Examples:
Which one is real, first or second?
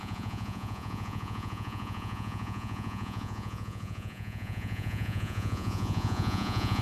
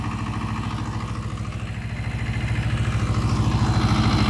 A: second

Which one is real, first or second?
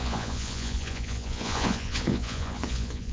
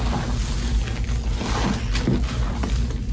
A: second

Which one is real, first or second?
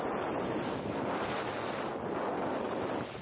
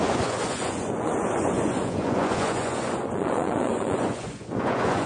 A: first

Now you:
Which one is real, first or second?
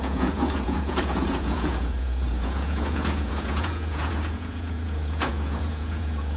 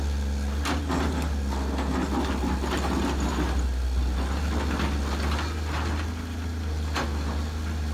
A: second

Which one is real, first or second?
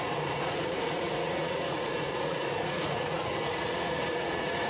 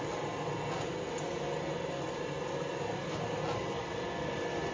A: second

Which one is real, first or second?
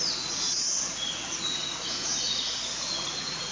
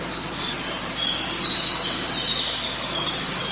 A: second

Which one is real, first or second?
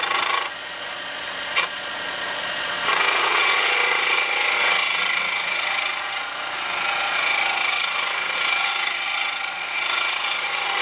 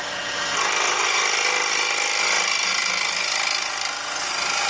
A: second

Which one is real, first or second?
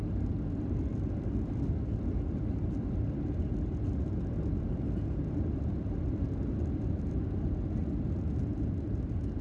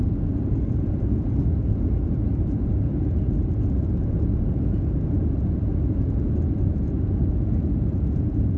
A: first